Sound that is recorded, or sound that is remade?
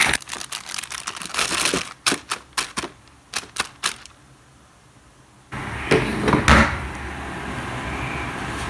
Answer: recorded